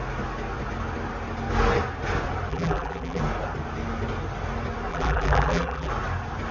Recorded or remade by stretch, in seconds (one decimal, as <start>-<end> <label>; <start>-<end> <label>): 0.0-2.5 recorded; 2.5-3.2 remade; 3.2-4.9 recorded; 4.9-5.9 remade; 5.9-6.5 recorded